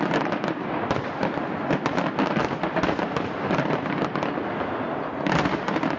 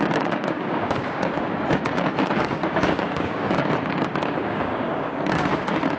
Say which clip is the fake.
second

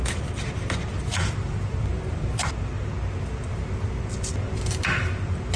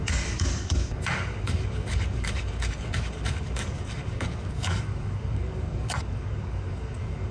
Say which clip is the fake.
second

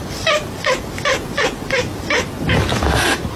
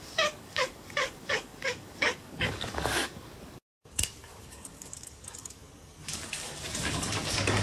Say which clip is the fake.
second